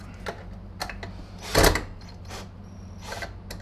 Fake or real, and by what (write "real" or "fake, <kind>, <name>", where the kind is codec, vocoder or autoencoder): real